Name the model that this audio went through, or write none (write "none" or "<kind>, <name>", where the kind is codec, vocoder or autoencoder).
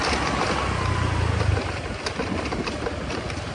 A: none